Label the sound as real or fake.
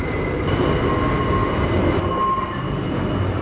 real